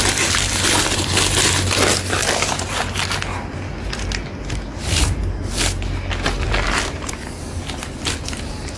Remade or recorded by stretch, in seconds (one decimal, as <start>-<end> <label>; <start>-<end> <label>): 0.0-8.8 recorded